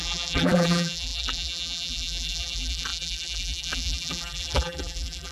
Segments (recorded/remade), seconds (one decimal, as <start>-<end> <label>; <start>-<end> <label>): 0.0-5.3 remade